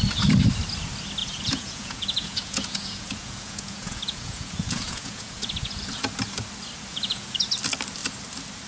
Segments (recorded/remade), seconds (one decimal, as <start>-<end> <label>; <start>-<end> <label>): 0.0-1.2 recorded; 1.2-5.8 remade; 5.8-6.9 recorded; 6.9-7.4 remade; 7.4-8.7 recorded